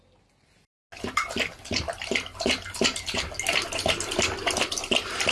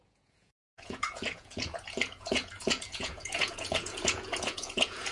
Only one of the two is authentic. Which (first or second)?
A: first